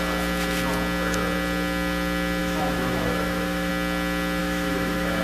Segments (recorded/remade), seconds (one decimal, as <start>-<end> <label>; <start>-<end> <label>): 0.0-2.4 recorded; 2.4-3.7 remade; 3.7-4.4 recorded; 4.4-5.2 remade

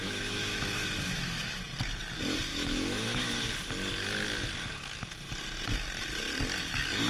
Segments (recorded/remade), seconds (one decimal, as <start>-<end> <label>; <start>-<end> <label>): 0.0-1.6 remade; 1.6-2.5 recorded; 2.5-3.4 remade; 3.4-7.1 recorded